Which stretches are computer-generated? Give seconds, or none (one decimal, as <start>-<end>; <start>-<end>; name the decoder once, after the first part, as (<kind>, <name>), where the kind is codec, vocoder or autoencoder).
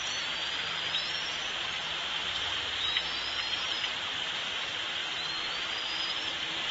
none